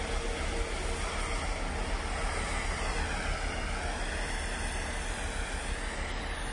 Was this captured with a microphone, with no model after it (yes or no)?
yes